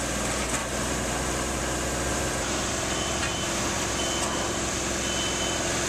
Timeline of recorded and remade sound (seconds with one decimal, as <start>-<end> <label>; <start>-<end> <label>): 0.0-0.6 recorded; 0.6-1.6 remade; 1.6-2.1 recorded; 2.1-2.7 remade; 2.7-3.2 recorded; 3.2-4.0 remade; 4.0-5.9 recorded